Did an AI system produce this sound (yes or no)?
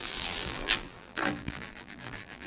yes